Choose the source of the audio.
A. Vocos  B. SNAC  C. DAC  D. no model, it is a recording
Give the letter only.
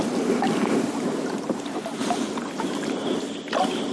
D